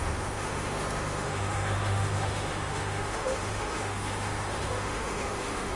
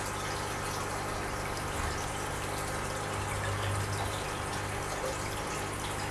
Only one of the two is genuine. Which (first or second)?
second